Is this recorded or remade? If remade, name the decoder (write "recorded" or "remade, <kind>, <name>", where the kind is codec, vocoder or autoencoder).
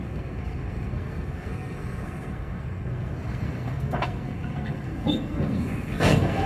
remade, codec, SNAC